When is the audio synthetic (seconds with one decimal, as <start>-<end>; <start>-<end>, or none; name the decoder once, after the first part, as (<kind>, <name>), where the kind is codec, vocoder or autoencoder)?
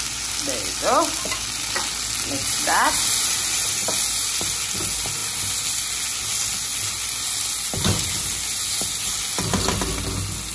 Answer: none